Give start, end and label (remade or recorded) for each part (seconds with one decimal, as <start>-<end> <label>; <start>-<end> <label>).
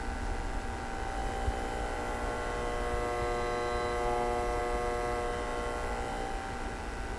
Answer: 0.0-7.2 recorded